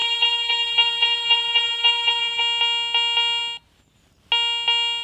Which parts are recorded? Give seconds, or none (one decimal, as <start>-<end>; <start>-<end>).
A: 2.4-5.0